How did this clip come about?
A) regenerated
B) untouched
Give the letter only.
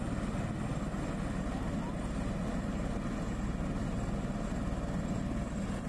B